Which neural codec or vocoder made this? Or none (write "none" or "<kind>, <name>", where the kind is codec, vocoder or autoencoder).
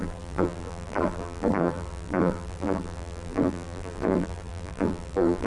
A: vocoder, BigVGAN v2